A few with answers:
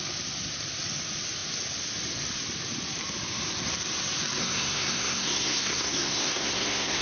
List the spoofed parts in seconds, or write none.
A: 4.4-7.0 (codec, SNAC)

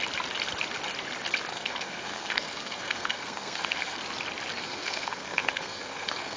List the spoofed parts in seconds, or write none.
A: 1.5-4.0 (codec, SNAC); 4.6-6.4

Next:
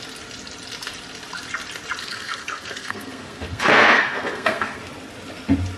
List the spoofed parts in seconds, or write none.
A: 2.0-4.8 (codec, SNAC)